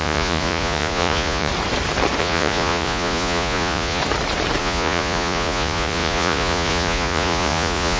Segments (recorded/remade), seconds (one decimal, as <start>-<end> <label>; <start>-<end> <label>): 0.0-1.5 remade; 1.5-2.2 recorded; 2.2-4.0 remade; 4.0-4.6 recorded; 4.6-8.0 remade